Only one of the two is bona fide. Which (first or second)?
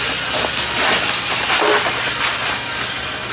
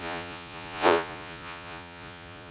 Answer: first